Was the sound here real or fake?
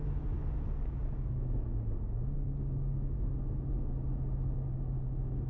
real